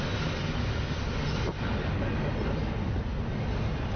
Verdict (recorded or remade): recorded